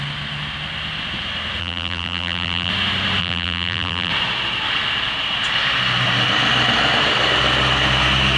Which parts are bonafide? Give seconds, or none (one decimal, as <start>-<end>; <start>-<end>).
0.0-1.6; 2.7-3.2; 4.1-8.4